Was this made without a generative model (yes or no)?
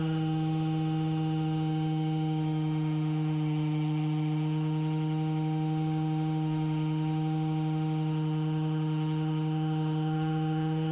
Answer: no